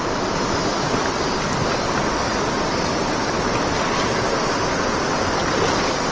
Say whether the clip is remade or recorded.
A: recorded